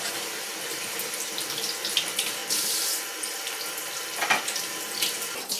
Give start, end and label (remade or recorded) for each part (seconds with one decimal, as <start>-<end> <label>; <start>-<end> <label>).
0.0-5.6 recorded